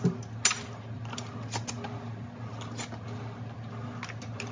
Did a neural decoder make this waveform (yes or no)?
no